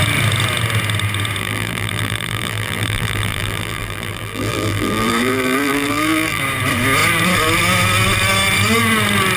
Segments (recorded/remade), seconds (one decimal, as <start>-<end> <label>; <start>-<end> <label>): 0.0-1.4 recorded; 1.4-6.4 remade; 6.4-9.4 recorded